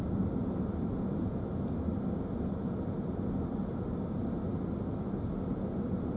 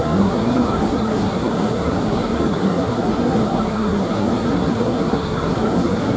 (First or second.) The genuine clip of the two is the first